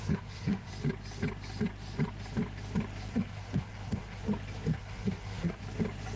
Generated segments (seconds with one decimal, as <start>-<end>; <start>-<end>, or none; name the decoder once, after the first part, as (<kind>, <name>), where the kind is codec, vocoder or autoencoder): 0.0-0.7 (codec, SNAC); 3.1-4.2; 4.7-5.6